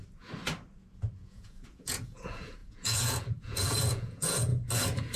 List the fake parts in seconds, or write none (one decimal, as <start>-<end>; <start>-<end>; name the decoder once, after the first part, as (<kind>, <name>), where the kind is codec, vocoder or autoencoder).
1.1-4.5 (vocoder, Vocos)